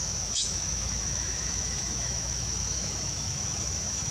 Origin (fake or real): fake